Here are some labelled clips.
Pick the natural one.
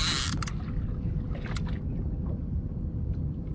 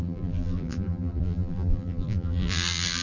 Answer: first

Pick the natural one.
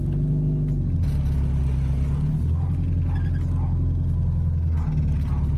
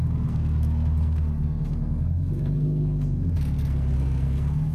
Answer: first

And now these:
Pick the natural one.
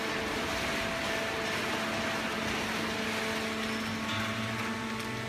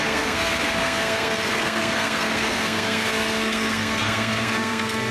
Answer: first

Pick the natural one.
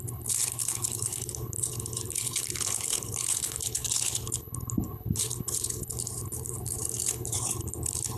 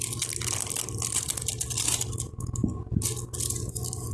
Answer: second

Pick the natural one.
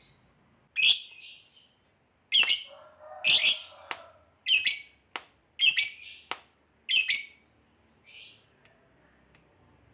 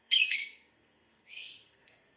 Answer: first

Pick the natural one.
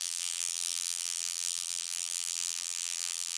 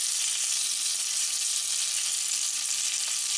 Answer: second